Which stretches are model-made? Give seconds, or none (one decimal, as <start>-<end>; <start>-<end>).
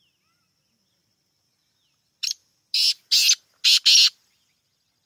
none